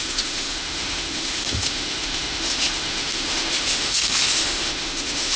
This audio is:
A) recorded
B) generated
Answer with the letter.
B